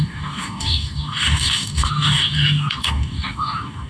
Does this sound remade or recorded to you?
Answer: remade